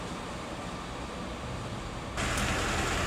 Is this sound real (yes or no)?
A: yes